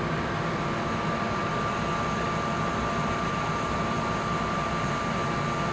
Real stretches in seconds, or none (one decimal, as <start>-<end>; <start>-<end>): 0.0-5.7